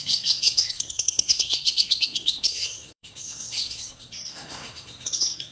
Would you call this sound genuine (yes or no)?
no